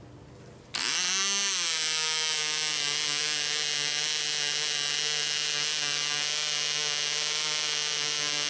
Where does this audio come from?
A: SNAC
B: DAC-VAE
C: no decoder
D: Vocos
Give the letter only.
C